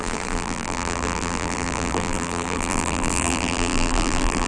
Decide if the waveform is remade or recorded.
remade